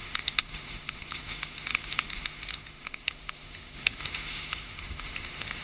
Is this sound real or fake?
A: fake